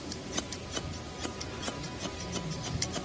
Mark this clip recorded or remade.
recorded